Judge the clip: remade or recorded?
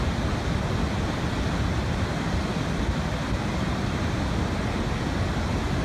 recorded